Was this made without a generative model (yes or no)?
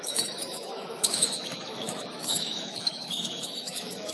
no